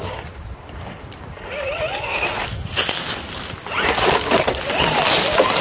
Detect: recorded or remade recorded